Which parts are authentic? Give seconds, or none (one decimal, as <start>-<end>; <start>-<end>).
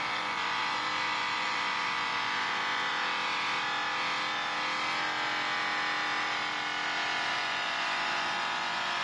2.9-7.3